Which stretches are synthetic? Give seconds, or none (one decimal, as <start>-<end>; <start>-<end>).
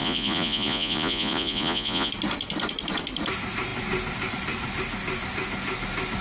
0.0-2.1